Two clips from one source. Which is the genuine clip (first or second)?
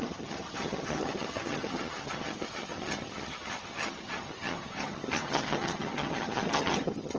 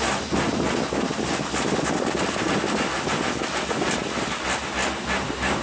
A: second